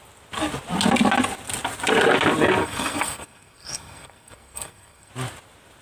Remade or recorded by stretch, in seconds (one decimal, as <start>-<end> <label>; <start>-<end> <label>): 0.0-2.6 recorded; 2.6-5.1 remade; 5.1-5.8 recorded